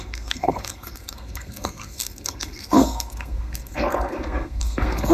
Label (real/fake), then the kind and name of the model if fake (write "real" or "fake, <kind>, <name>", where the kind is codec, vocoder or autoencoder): fake, codec, SNAC